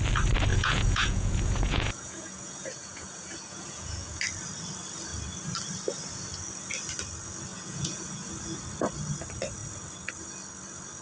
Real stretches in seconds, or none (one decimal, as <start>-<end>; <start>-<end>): 0.0-0.5; 4.2-7.5; 8.3-11.0